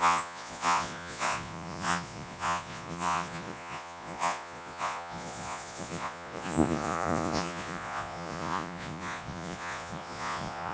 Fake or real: fake